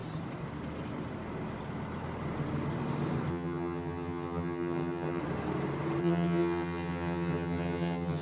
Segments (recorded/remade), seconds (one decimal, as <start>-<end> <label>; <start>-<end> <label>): 0.0-3.3 recorded; 3.3-5.2 remade; 5.2-6.0 recorded; 6.0-8.2 remade